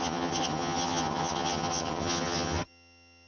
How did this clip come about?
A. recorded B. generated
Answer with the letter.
B